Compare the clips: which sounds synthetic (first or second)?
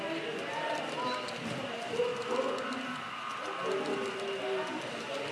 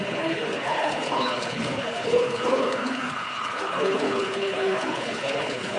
second